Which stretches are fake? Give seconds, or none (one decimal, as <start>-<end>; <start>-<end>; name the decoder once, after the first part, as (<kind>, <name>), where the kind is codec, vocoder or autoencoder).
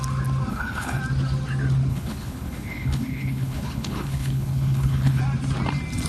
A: 0.5-1.0 (codec, HILCodec); 1.9-5.2